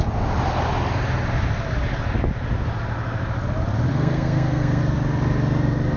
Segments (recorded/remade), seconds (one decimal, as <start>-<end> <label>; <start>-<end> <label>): 0.0-3.9 recorded; 3.9-4.8 remade; 4.8-6.0 recorded